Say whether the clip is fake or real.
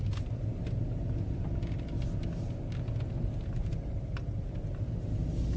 real